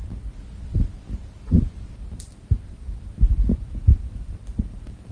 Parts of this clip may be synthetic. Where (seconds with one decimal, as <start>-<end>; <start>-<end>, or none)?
none